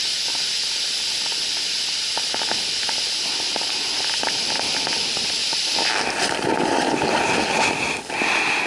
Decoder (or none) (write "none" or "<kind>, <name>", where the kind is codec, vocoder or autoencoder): none